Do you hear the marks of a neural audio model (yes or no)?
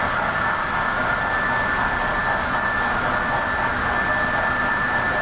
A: no